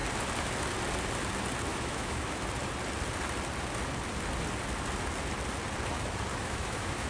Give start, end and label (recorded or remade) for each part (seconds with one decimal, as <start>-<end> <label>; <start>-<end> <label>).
0.0-1.7 recorded; 1.7-2.4 remade; 2.4-6.3 recorded; 6.3-7.1 remade